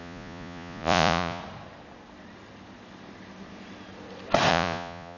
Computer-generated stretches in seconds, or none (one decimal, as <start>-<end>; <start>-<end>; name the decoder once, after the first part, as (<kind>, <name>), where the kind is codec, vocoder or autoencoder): 0.0-1.4 (vocoder, Vocos); 4.5-5.2